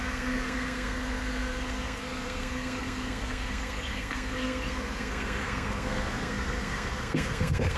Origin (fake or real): fake